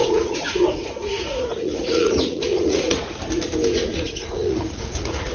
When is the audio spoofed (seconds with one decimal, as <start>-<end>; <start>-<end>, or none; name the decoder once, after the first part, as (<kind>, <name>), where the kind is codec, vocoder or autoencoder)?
0.0-3.2 (vocoder, Vocos); 3.9-5.3